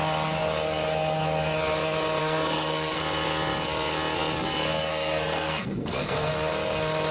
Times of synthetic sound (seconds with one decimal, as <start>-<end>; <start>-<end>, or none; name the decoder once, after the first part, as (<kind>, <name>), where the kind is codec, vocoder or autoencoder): 2.2-3.0 (codec, SNAC); 4.9-6.3